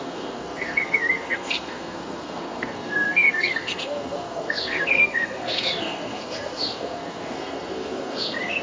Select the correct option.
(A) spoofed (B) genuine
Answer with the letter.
A